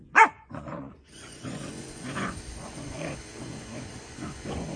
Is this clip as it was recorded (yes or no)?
no